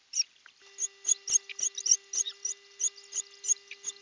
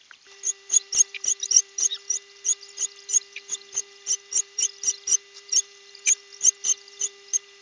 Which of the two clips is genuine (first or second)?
first